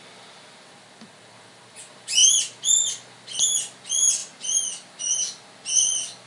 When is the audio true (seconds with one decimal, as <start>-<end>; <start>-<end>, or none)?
0.0-6.3